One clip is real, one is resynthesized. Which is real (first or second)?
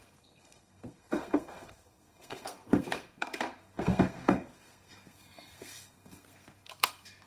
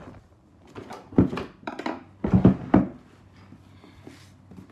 second